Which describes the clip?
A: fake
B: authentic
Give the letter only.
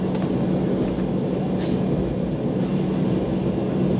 B